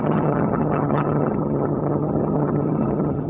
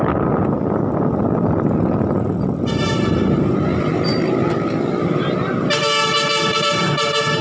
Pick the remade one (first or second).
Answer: first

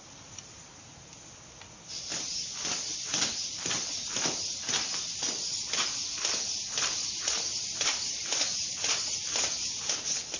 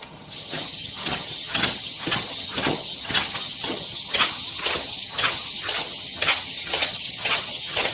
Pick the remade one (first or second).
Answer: second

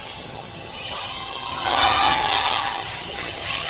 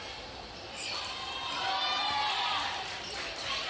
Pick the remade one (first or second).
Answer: first